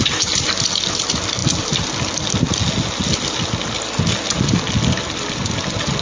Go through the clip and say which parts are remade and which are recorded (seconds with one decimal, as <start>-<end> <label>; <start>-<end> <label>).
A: 0.0-6.0 recorded